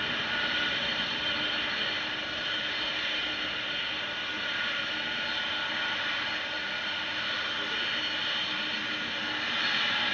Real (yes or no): yes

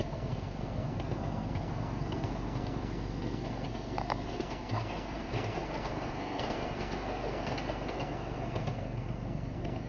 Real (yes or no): no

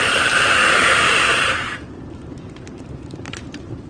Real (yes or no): no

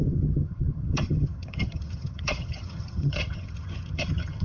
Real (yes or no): no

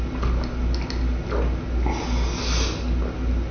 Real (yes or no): yes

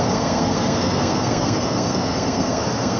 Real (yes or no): no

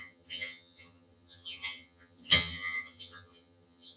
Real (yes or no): no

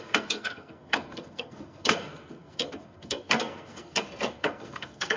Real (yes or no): no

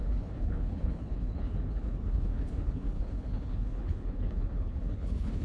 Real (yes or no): no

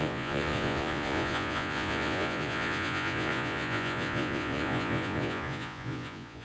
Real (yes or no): no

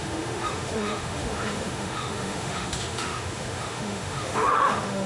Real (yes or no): no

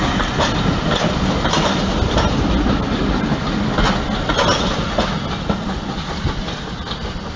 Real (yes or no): yes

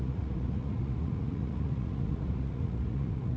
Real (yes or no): no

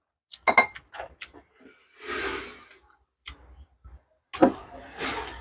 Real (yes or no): yes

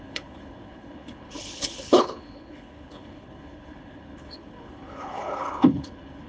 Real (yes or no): no